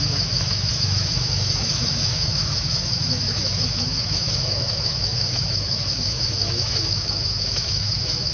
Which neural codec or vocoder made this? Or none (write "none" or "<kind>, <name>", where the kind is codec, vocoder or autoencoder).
autoencoder, DAC-VAE